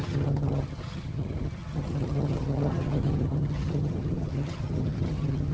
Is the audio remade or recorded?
remade